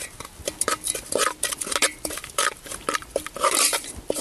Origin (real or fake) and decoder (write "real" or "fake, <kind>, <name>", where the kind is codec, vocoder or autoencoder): real